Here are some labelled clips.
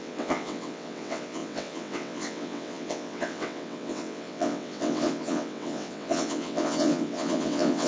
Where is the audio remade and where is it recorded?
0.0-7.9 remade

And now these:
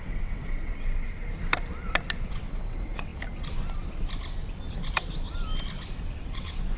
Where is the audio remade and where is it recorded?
0.0-0.4 remade; 0.4-2.3 recorded; 2.3-3.1 remade; 3.1-6.2 recorded; 6.2-6.8 remade

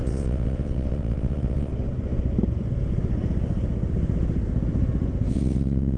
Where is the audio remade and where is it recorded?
0.0-1.7 remade; 1.7-5.3 recorded; 5.3-6.0 remade

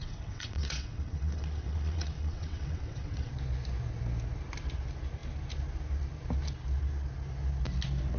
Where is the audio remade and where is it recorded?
0.0-3.3 remade; 3.3-8.2 recorded

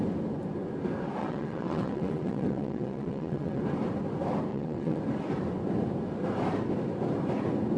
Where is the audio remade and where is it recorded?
0.0-1.2 recorded; 1.2-3.6 remade; 3.6-4.5 recorded; 4.5-5.0 remade; 5.0-7.8 recorded

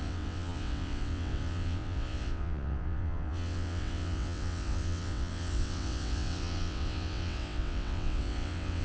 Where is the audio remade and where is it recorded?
0.0-8.8 remade

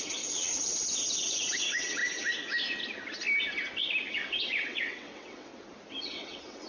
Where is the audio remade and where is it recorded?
0.0-2.0 remade; 2.0-4.1 recorded; 4.1-5.5 remade; 5.5-6.0 recorded; 6.0-6.7 remade

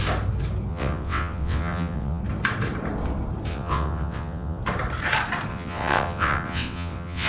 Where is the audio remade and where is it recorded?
0.0-0.7 recorded; 0.7-2.2 remade; 2.2-3.5 recorded; 3.5-4.6 remade; 4.6-5.5 recorded; 5.5-7.3 remade